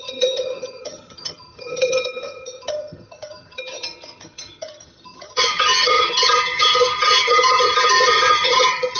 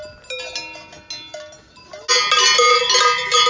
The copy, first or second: first